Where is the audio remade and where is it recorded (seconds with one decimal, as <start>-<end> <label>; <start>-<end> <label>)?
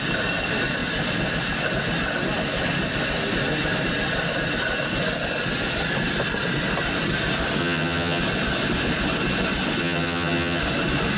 0.0-7.6 recorded; 7.6-8.2 remade; 8.2-9.8 recorded; 9.8-10.6 remade; 10.6-11.2 recorded